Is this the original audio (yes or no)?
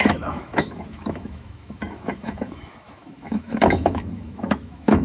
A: no